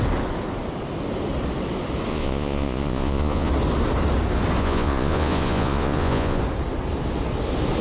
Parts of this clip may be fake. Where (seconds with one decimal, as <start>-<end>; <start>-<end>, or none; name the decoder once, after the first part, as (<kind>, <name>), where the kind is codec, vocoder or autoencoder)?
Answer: 2.1-3.5 (vocoder, Vocos); 4.6-6.4

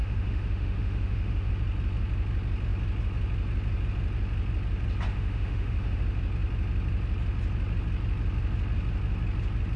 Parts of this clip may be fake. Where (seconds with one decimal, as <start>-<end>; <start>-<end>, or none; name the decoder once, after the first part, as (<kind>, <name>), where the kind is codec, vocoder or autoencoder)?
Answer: 0.0-1.5 (autoencoder, DAC-VAE); 5.1-6.0

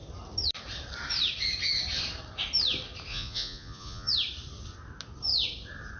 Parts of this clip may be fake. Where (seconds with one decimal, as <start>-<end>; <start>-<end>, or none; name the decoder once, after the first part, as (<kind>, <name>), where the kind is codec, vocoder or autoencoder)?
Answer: 3.1-4.1 (vocoder, Vocos)

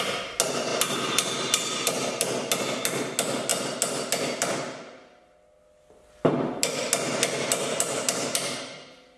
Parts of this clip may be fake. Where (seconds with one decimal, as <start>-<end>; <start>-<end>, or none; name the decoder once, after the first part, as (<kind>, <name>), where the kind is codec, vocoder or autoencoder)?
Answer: none

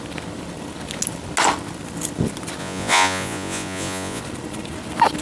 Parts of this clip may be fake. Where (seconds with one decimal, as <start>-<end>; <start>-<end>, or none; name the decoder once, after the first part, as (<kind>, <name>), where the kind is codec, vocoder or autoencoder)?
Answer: 2.6-4.2 (vocoder, Vocos)

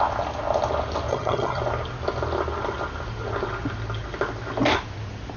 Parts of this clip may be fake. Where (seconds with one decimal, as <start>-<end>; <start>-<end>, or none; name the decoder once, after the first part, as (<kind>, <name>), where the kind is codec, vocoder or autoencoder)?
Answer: 1.1-1.6 (vocoder, HiFi-GAN)

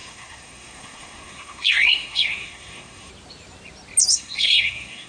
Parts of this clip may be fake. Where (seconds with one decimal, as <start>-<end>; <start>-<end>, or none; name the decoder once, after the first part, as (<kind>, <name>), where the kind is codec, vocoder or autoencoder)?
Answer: 0.0-3.1 (codec, SNAC); 4.1-5.1

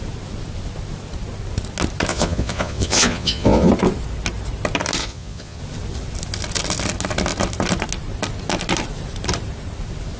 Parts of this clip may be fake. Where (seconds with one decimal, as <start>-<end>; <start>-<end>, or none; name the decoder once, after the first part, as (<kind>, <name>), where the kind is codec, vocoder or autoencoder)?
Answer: 2.1-3.7 (vocoder, Vocos); 5.0-5.6